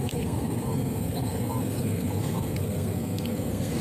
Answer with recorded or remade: remade